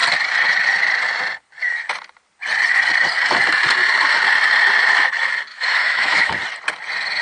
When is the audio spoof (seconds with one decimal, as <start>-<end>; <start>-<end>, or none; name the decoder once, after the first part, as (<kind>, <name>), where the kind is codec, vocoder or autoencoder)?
5.5-6.3 (autoencoder, DAC-VAE)